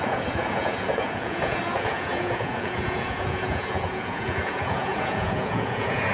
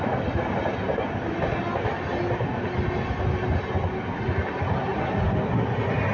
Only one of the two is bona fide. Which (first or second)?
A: second